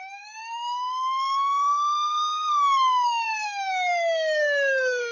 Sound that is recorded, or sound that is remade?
remade